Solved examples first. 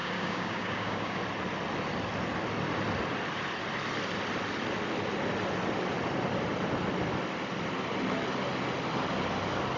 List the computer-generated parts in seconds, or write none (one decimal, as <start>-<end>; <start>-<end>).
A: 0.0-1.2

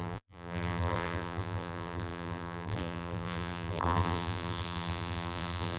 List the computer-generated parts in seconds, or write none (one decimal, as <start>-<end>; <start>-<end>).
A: 0.0-5.8

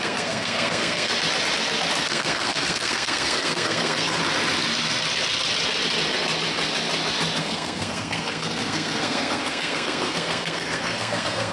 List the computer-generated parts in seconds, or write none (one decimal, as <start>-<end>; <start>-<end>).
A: 0.0-1.1; 2.1-4.2; 7.4-11.5

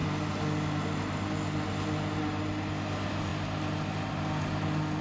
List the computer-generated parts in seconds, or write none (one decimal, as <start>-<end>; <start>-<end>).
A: none